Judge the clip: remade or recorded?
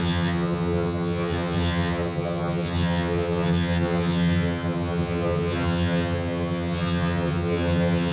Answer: remade